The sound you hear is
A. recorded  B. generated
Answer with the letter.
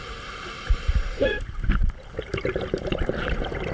B